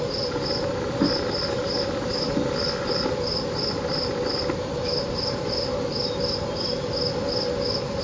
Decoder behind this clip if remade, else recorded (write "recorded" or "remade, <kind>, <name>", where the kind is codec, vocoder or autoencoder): recorded